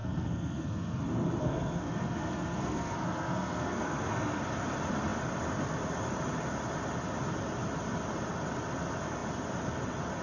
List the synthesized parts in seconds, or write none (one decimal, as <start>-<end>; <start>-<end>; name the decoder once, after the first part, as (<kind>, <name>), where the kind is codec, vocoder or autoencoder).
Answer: 0.0-1.0 (codec, SNAC); 1.4-4.4